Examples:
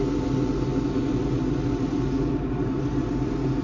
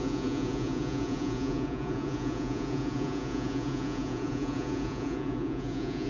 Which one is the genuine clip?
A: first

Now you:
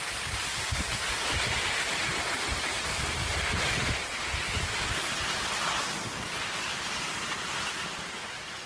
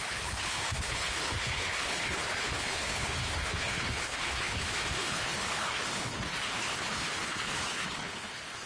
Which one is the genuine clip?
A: first